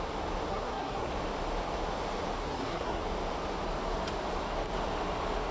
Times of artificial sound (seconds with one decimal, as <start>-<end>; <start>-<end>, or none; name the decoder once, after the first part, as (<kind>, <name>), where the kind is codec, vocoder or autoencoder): 0.5-1.1 (codec, SNAC); 2.4-3.0